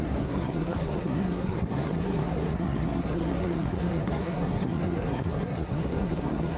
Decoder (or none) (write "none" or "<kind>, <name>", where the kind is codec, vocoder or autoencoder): codec, SNAC